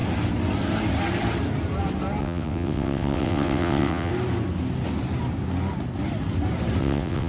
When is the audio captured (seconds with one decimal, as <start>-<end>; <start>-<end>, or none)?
0.0-2.2; 4.1-6.8